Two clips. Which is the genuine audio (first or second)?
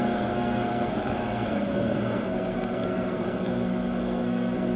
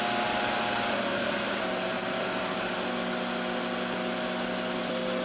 second